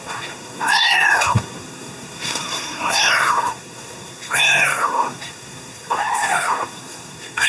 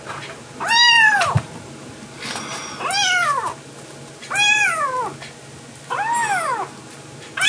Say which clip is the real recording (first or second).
second